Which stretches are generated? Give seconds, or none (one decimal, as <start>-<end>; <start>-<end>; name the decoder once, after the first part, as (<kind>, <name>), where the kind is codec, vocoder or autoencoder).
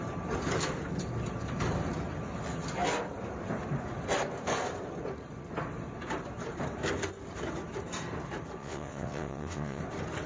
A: 8.6-9.8 (vocoder, WaveNeXt)